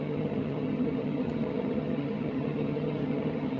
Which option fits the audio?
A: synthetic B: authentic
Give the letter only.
A